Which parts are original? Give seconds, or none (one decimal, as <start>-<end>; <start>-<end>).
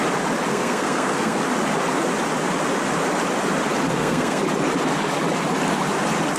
0.0-0.5; 1.4-3.9; 4.4-6.4